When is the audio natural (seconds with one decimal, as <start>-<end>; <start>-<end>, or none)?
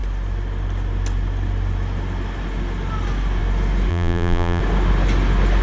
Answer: 0.0-3.9; 4.6-5.6